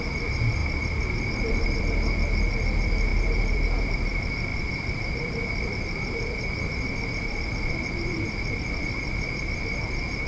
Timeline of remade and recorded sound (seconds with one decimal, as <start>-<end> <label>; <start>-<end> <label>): 0.0-10.3 remade